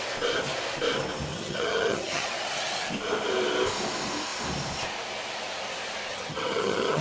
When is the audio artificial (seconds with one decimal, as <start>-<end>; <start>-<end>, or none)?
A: 1.3-2.3; 6.1-7.0